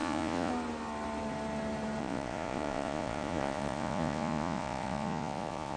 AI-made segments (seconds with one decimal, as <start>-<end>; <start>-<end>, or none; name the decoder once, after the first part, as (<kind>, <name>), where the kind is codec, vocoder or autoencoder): 0.0-0.5 (vocoder, Vocos); 2.0-5.8